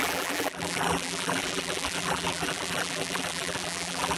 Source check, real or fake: fake